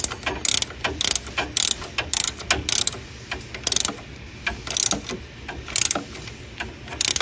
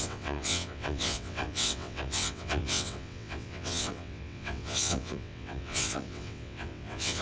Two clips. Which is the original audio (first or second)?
first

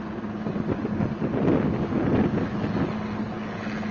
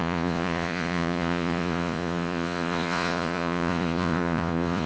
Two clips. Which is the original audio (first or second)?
first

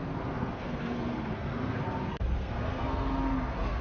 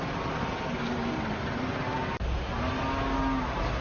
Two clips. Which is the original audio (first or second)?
second